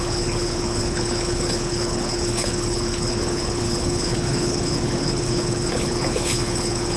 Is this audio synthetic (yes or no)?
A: yes